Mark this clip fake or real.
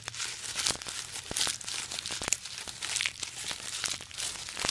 real